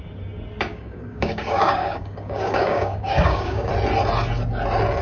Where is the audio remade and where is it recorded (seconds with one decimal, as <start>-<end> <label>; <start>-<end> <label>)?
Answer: 0.0-0.7 recorded; 0.7-3.7 remade; 3.7-5.0 recorded